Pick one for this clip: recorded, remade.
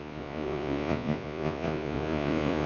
remade